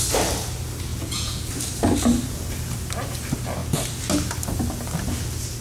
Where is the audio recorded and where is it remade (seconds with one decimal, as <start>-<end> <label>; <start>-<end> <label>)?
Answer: 0.0-0.9 recorded; 0.9-1.5 remade; 1.5-5.6 recorded